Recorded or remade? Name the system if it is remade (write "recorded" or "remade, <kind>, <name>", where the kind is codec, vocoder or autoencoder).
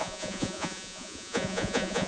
remade, vocoder, Vocos